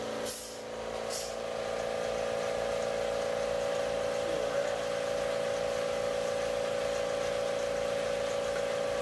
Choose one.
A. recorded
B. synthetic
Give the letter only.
A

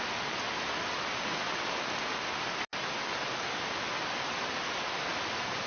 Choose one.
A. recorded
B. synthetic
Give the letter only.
A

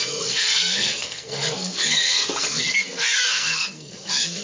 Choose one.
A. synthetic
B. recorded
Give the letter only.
A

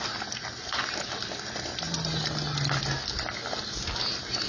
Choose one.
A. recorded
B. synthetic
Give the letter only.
A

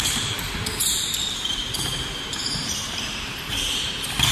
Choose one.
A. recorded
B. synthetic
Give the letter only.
B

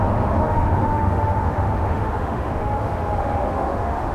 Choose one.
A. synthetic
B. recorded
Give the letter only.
A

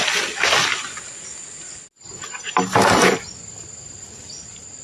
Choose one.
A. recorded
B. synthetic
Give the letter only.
A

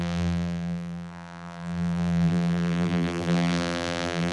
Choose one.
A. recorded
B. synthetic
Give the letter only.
B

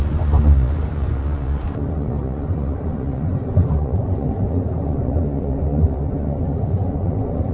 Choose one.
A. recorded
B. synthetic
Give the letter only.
B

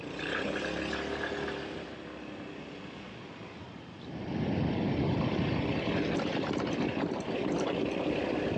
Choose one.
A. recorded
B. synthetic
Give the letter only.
A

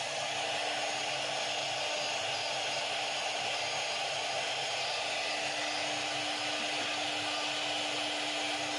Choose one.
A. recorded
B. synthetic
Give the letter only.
A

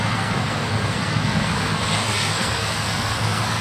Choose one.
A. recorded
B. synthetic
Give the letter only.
B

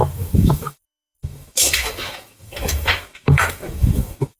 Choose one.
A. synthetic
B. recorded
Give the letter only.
A